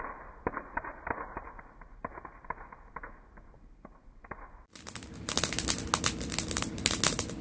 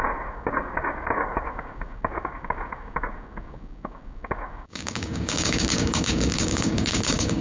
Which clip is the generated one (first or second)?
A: second